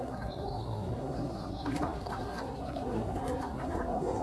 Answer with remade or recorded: remade